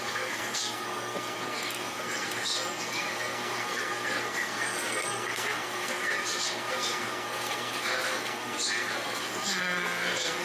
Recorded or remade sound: remade